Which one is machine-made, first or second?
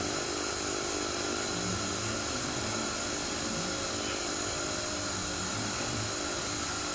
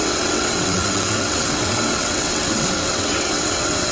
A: second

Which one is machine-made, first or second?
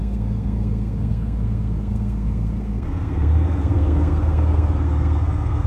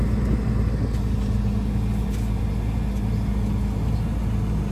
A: first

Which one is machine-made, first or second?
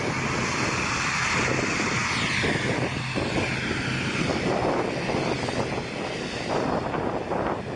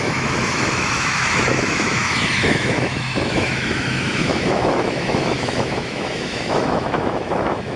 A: second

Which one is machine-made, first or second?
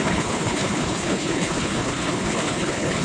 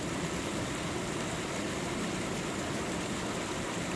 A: first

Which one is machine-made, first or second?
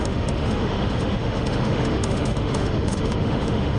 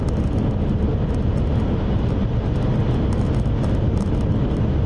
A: first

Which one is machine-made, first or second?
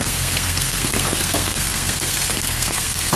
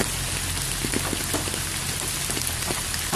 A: first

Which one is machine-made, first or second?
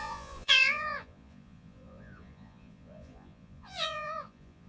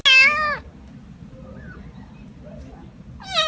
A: first